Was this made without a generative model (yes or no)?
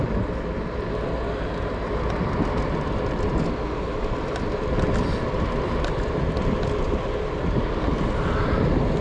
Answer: yes